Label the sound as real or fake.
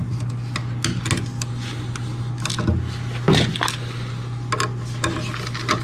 real